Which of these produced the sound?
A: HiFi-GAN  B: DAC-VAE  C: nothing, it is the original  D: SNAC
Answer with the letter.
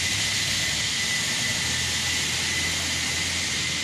C